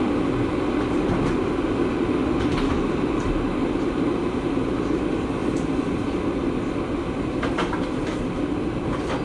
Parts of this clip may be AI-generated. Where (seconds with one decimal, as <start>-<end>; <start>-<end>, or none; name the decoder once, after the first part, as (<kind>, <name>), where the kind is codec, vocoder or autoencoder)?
none